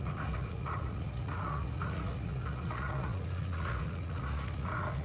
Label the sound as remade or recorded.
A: remade